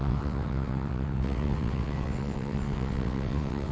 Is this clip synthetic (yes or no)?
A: yes